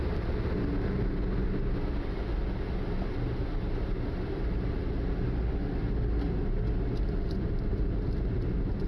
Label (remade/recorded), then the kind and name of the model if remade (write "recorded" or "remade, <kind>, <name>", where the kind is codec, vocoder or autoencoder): recorded